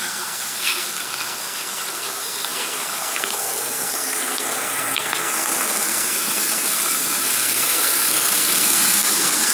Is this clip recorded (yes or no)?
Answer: no